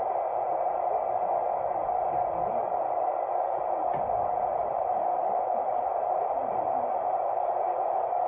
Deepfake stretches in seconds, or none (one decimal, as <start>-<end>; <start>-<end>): 4.6-8.3